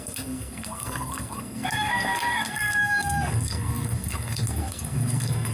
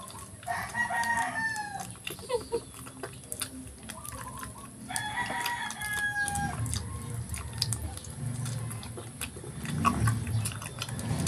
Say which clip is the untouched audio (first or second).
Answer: second